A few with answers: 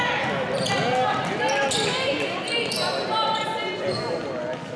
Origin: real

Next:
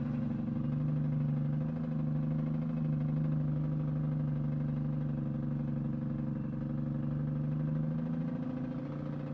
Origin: real